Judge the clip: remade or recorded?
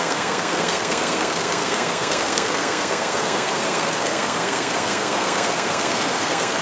remade